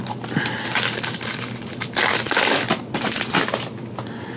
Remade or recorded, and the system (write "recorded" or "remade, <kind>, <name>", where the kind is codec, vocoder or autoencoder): recorded